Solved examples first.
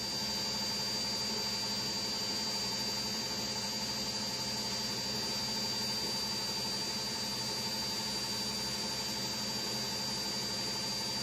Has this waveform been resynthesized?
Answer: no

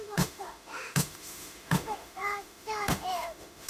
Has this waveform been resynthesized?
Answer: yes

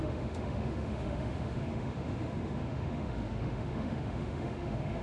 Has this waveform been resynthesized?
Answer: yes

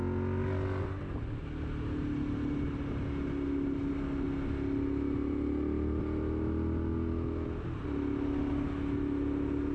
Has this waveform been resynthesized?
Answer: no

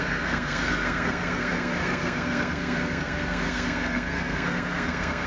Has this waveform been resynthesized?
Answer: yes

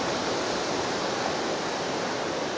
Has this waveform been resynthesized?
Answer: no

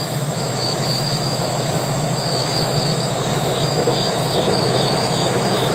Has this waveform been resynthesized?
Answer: yes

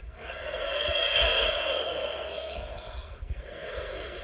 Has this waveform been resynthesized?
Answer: yes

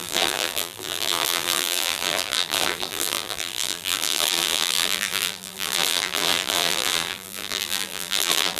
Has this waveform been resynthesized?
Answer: yes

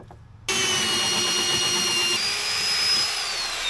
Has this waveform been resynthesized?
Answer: no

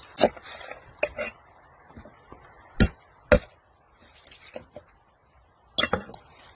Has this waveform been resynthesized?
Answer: no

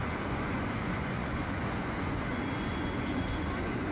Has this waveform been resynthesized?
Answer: yes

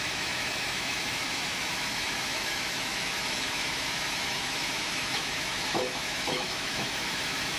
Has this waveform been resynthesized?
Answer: yes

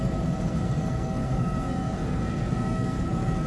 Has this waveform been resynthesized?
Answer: yes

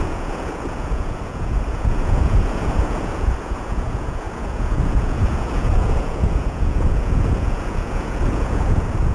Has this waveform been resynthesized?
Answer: yes